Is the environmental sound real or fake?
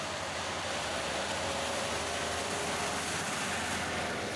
real